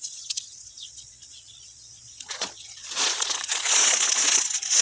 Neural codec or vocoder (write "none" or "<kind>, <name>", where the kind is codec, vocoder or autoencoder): vocoder, Vocos